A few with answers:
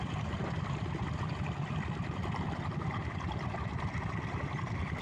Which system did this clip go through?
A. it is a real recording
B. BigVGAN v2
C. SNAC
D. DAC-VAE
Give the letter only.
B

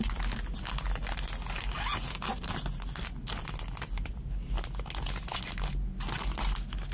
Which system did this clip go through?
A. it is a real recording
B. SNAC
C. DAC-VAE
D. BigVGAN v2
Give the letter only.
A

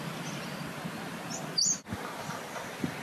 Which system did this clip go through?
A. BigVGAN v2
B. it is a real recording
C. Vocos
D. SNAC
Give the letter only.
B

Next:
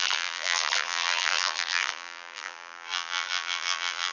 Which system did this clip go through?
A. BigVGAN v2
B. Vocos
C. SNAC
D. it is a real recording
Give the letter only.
A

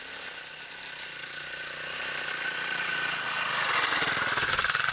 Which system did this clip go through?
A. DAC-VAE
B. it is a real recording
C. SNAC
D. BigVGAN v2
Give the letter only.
B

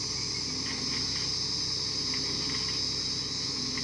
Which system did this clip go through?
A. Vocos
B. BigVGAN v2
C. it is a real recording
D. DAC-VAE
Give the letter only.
C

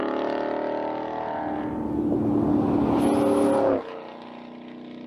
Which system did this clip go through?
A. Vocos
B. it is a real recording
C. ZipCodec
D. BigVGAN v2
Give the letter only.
B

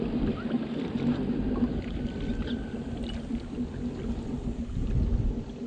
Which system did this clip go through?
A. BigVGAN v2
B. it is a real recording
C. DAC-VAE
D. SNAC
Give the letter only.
B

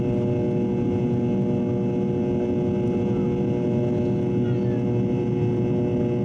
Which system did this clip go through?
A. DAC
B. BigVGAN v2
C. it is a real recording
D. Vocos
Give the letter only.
C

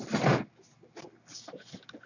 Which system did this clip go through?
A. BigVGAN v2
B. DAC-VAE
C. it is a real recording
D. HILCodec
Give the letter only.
C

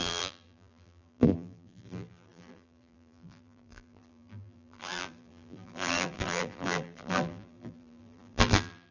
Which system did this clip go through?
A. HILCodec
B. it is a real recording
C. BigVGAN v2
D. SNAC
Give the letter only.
C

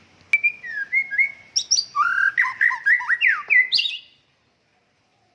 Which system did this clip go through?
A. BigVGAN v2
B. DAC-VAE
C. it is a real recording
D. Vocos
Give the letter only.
C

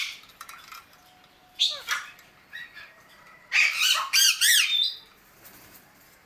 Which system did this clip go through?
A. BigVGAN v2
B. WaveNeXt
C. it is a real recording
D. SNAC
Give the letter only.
A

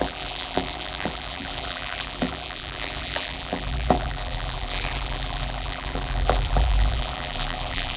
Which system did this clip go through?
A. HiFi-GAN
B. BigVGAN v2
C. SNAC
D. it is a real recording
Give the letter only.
B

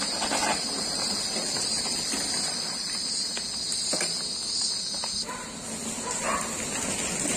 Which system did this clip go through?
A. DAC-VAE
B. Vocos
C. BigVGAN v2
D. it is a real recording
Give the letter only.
D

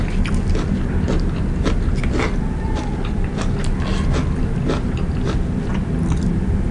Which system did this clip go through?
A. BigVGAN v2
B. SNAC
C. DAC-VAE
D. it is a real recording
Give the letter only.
D